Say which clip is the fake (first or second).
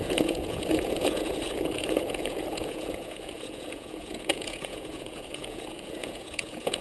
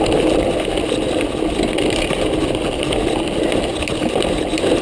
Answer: first